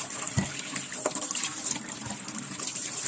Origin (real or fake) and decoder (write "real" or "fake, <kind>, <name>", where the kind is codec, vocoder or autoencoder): real